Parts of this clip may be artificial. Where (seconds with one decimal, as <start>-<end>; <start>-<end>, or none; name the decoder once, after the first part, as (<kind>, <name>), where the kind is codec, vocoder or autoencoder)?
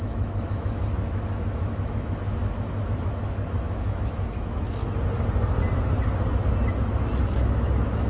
0.0-4.8 (autoencoder, DAC-VAE); 7.2-8.1